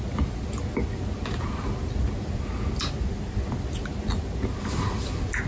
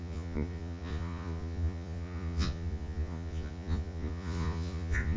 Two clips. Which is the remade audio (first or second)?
second